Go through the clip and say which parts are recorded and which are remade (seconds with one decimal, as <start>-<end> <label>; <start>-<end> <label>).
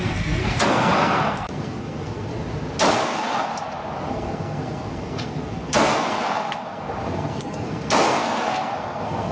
0.0-2.3 remade; 2.3-2.9 recorded; 2.9-3.5 remade; 3.5-4.1 recorded; 4.1-9.3 remade